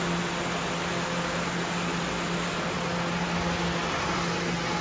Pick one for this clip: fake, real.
real